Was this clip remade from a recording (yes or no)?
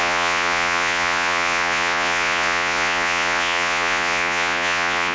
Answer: yes